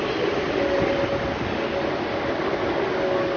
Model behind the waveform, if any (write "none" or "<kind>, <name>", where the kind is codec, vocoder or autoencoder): none